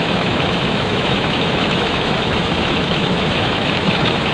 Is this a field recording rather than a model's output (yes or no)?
no